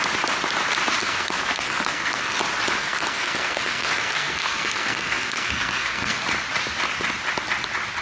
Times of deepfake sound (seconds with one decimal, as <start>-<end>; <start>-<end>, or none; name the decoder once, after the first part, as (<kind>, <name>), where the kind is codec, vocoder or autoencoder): 1.0-2.4 (codec, SNAC); 2.8-6.2